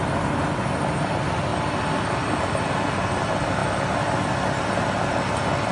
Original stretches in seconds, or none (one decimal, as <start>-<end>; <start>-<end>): 0.0-3.6; 4.3-5.7